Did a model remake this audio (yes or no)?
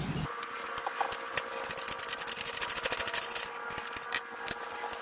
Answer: no